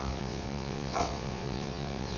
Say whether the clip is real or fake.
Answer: fake